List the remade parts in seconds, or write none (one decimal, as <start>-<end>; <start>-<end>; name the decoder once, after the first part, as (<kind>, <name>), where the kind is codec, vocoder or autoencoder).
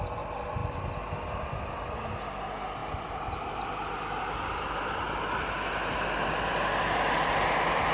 none